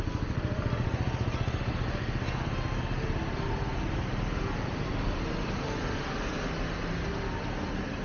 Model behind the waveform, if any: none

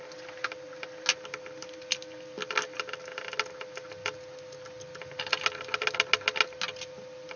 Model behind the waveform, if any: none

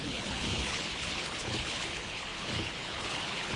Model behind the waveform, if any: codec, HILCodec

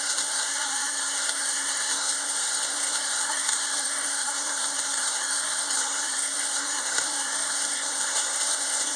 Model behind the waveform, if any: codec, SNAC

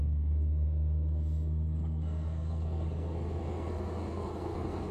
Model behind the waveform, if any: codec, SNAC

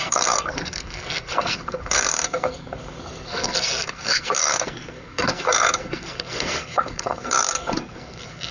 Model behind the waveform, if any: codec, SNAC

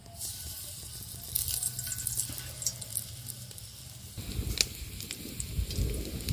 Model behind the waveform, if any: none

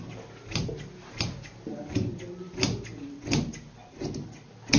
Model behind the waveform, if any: none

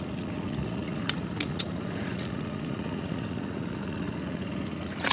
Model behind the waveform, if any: vocoder, Vocos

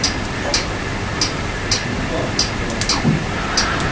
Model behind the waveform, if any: none